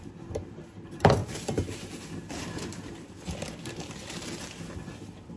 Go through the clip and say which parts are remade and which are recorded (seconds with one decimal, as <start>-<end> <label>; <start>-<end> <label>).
0.0-5.4 remade